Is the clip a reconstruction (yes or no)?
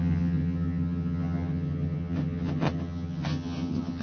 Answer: yes